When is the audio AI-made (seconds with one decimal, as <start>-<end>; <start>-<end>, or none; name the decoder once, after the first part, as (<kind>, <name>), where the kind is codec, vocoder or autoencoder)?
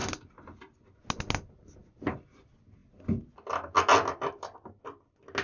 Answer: none